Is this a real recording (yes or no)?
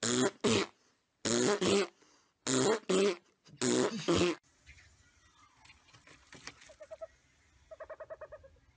yes